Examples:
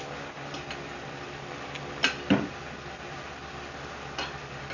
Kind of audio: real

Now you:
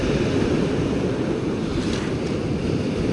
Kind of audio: real